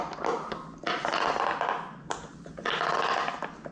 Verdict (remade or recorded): recorded